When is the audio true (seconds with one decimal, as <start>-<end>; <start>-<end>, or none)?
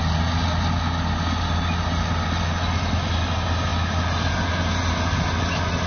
0.0-5.9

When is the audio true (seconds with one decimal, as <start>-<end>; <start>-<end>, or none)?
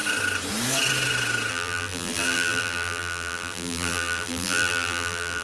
0.0-1.5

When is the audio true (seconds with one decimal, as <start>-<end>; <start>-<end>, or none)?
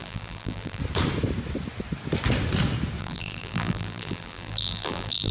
0.8-3.0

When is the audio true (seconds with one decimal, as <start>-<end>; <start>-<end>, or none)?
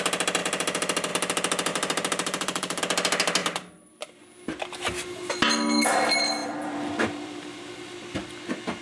0.0-0.4; 1.1-1.7; 2.8-3.4; 4.2-6.4; 7.7-8.8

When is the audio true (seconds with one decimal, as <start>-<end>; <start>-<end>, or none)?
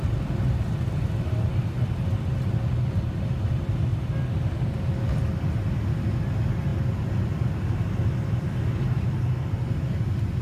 0.0-10.4